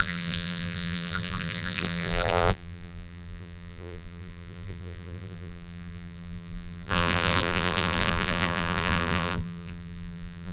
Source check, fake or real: fake